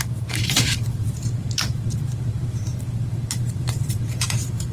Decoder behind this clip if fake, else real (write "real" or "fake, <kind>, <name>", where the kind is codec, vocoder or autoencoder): fake, vocoder, BigVGAN v2